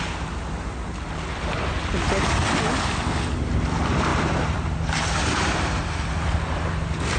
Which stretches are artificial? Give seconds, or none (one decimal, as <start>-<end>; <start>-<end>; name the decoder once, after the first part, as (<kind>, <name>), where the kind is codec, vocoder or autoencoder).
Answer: 4.1-5.7 (vocoder, BigVGAN v2)